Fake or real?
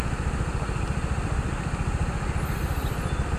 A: real